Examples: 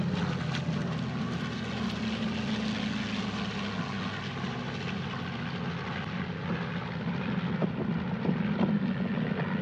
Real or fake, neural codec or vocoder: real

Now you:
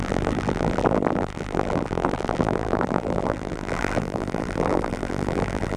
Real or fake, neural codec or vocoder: fake, vocoder, BigVGAN v2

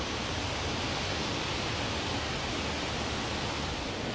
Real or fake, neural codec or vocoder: real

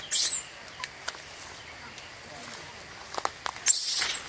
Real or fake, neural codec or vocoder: real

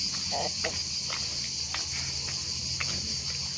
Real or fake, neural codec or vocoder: real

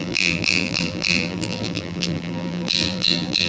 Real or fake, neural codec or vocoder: fake, vocoder, BigVGAN v2